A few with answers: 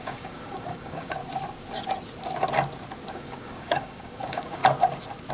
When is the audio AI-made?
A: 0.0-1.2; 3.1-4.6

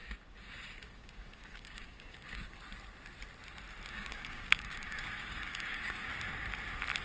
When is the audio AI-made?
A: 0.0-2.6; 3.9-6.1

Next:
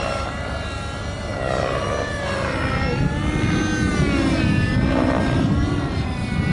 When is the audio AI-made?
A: none

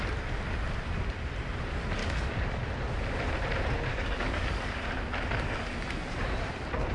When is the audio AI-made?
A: 2.0-2.6; 3.9-4.8